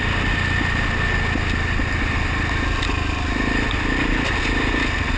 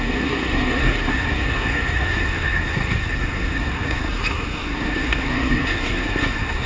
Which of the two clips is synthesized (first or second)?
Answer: second